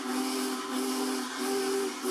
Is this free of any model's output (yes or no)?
yes